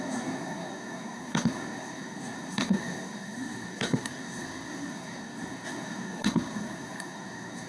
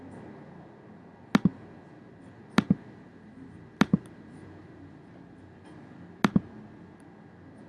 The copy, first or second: first